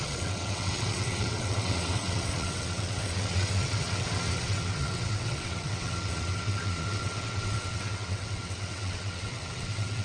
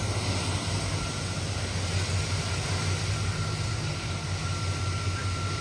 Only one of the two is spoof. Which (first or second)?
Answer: first